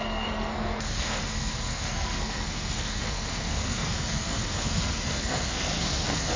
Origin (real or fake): fake